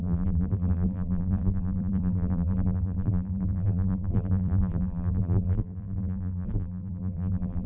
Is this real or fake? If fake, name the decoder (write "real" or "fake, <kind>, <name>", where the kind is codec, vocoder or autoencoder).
fake, vocoder, BigVGAN v2